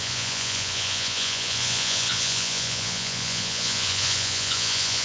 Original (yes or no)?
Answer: no